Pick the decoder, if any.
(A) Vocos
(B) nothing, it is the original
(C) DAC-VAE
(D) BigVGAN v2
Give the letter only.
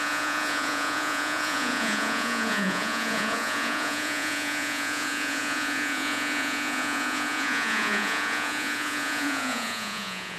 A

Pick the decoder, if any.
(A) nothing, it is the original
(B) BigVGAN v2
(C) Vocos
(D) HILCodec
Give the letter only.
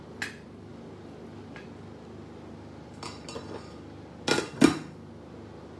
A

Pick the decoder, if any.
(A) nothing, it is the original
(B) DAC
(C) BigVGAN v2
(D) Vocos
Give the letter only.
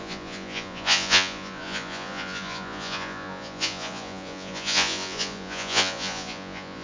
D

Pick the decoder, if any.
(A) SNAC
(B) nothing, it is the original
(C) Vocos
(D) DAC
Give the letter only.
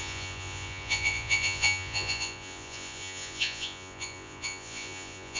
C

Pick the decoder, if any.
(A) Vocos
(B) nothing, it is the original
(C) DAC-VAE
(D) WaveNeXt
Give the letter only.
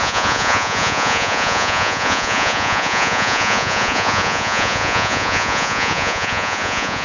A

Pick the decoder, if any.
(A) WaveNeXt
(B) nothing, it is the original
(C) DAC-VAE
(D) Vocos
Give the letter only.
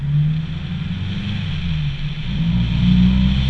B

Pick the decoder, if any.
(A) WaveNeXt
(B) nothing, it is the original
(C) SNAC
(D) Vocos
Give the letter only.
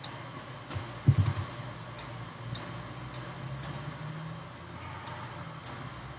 B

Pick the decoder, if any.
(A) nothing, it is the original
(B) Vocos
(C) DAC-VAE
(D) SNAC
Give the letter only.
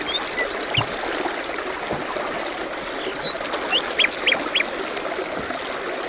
A